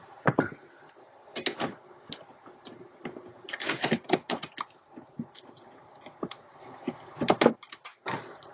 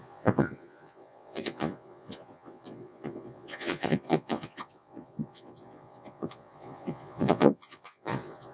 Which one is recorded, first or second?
first